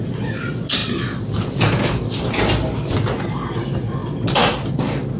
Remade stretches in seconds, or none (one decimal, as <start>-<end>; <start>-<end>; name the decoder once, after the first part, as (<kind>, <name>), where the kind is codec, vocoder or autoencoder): none